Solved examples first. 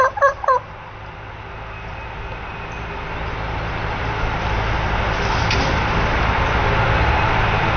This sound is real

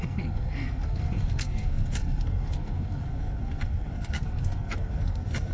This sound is fake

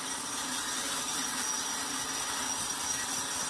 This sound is real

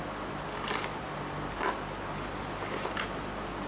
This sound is real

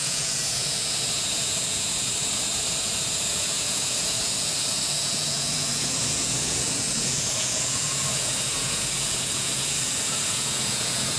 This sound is fake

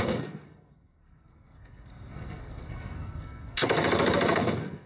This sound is fake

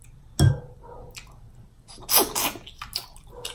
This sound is real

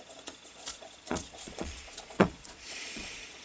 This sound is fake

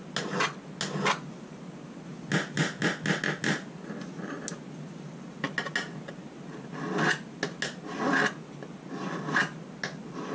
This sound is real